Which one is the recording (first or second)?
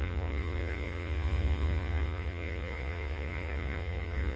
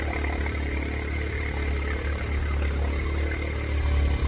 second